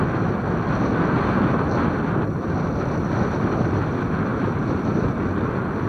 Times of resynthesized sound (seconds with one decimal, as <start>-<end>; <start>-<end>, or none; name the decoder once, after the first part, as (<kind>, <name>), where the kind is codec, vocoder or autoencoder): 4.3-5.1 (vocoder, BigVGAN v2)